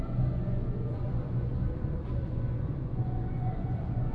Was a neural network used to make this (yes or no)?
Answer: yes